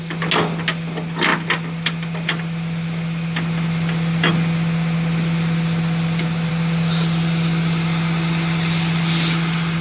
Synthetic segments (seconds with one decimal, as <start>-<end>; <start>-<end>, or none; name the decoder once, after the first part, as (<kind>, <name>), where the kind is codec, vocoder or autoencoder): none